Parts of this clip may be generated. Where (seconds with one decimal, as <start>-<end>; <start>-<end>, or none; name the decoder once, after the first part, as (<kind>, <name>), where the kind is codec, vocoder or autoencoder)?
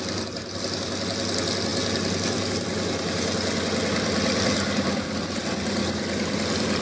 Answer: none